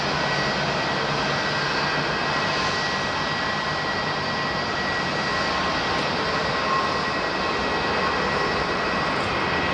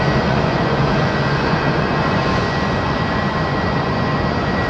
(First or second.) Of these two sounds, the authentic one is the first